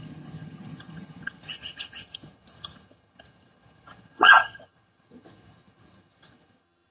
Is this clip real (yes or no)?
no